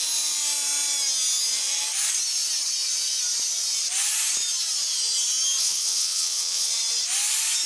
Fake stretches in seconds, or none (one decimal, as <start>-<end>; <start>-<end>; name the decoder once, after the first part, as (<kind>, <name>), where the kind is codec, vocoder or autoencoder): 5.6-6.7 (vocoder, WaveNeXt)